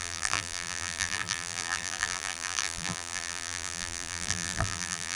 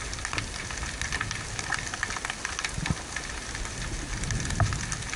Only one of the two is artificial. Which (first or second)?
first